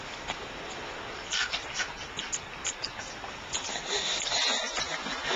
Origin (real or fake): real